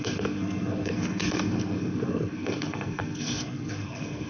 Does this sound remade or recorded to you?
remade